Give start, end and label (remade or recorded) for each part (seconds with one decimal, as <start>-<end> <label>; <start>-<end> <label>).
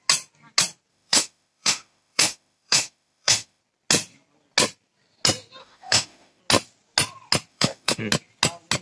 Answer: 0.0-0.9 recorded; 0.9-3.6 remade; 3.6-5.6 recorded; 5.6-6.4 remade; 6.4-7.5 recorded; 7.5-8.0 remade; 8.0-8.8 recorded